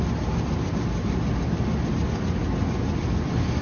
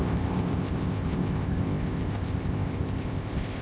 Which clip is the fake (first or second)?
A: second